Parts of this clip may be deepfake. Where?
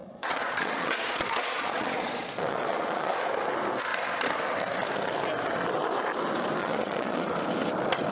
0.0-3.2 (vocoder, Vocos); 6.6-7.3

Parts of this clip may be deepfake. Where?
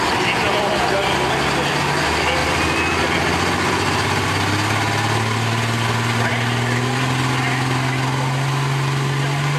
none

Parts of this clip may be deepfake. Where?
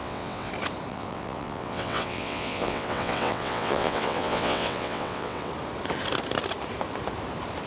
0.0-0.5 (vocoder, WaveNeXt); 0.9-5.5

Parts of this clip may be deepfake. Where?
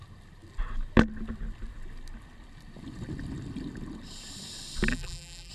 4.9-5.5 (vocoder, BigVGAN v2)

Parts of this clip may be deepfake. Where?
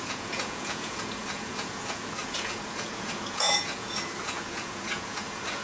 0.0-5.6 (vocoder, Vocos)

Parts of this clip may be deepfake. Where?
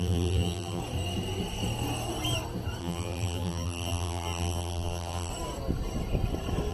0.0-0.8 (vocoder, BigVGAN v2); 2.8-5.3